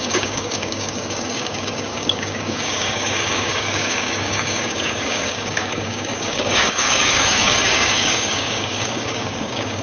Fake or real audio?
fake